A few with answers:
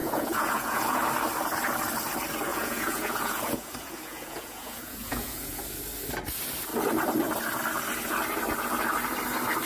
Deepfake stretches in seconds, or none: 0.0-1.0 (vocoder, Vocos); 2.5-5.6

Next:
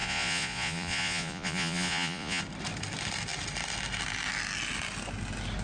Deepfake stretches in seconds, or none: 0.0-2.4 (vocoder, Vocos)

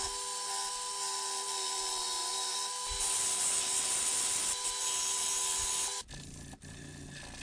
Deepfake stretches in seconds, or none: none

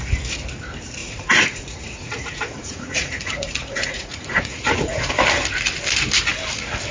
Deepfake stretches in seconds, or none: 1.0-5.1 (vocoder, Vocos)

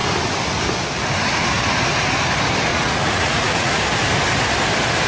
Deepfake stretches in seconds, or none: 2.7-3.8 (vocoder, Vocos)